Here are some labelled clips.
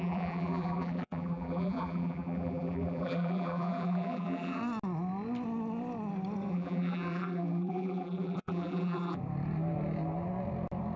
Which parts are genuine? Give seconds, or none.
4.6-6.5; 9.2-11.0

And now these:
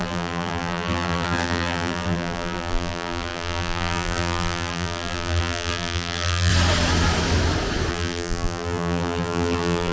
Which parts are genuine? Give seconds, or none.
6.5-7.9